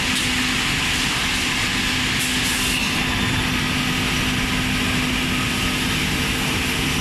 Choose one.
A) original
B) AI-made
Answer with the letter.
A